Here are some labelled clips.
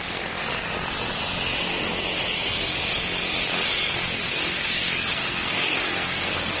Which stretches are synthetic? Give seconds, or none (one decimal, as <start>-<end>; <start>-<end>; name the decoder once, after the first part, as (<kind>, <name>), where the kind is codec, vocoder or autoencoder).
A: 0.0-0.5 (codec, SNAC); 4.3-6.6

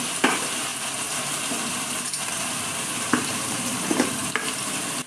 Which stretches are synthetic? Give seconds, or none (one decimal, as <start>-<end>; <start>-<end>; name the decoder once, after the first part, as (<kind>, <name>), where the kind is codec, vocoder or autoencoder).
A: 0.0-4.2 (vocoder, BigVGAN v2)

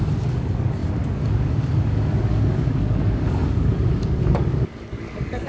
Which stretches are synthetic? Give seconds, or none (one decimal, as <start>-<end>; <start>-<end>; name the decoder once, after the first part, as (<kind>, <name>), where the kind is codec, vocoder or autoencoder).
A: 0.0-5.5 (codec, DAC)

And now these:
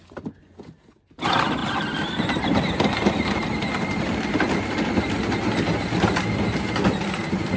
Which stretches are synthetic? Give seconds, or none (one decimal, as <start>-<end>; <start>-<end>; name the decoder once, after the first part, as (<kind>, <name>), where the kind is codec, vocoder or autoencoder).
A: none

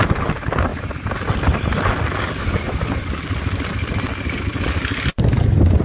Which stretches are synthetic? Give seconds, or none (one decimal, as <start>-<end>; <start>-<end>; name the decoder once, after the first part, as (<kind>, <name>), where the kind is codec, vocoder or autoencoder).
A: none